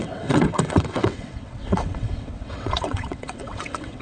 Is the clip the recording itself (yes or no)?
no